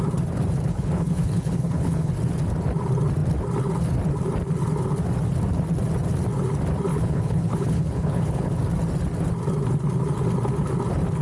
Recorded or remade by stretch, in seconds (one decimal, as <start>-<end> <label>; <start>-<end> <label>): 0.0-0.7 recorded; 0.7-2.1 remade; 2.1-6.9 recorded; 6.9-8.6 remade; 8.6-11.2 recorded